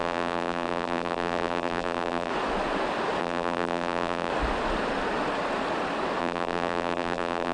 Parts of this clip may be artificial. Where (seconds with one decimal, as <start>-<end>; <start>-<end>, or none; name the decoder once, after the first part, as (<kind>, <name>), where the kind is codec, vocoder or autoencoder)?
0.0-2.3 (vocoder, BigVGAN v2); 3.2-4.3; 6.2-7.5